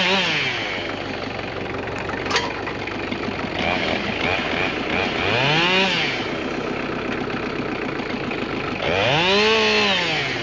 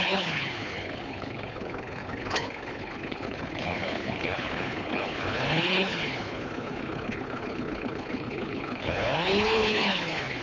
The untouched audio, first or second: first